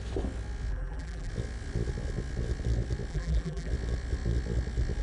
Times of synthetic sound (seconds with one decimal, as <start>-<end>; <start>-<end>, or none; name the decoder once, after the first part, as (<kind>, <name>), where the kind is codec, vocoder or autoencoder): 0.7-1.3 (vocoder, BigVGAN v2); 3.1-3.7